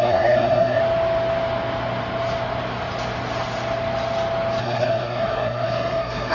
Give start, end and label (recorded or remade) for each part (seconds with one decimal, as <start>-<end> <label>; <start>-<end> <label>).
0.0-0.8 remade; 0.8-4.6 recorded; 4.6-6.3 remade

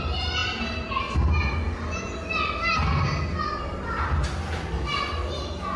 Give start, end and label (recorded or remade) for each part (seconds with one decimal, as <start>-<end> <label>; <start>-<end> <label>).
0.0-5.8 recorded

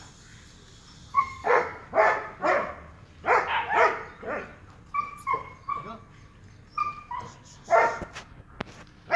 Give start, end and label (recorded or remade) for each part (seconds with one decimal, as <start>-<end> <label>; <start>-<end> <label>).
0.0-1.1 recorded; 1.1-1.8 remade; 1.8-9.2 recorded

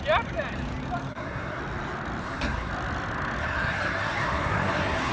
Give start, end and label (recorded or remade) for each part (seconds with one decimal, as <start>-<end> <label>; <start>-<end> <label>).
0.0-1.1 recorded; 1.1-1.6 remade; 1.6-2.2 recorded; 2.2-2.7 remade; 2.7-3.4 recorded; 3.4-5.1 remade

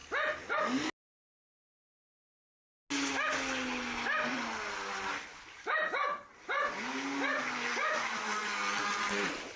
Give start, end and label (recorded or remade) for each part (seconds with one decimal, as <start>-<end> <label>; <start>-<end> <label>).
0.0-9.6 recorded